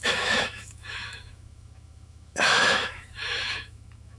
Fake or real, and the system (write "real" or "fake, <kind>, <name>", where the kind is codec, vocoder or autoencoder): fake, autoencoder, DAC-VAE